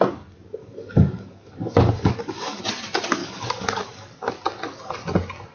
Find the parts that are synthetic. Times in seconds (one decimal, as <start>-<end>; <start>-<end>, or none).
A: 0.6-2.6; 3.2-4.3